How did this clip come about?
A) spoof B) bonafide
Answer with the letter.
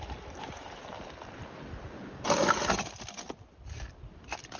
B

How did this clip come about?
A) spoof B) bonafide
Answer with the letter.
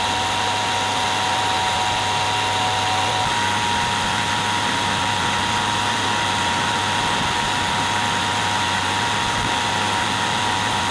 B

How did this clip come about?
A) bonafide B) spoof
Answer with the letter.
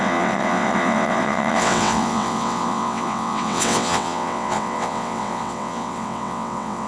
B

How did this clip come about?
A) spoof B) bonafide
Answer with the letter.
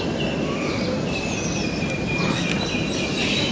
B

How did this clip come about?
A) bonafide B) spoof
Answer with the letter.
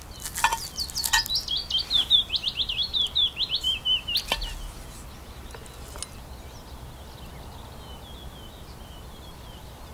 A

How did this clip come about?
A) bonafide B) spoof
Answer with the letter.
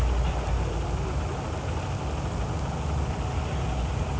A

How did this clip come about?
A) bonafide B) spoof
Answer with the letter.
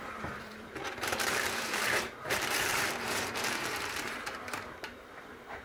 B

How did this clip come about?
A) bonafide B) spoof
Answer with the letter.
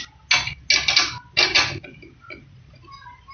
A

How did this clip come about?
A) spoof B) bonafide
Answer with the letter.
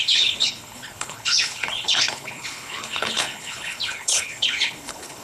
A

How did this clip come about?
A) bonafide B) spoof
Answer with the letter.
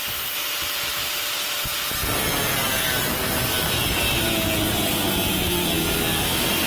A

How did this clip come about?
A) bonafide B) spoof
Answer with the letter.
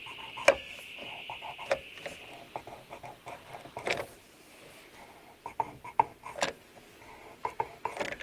A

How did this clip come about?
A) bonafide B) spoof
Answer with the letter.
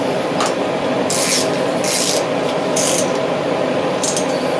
A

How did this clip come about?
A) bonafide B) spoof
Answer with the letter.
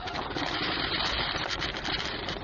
B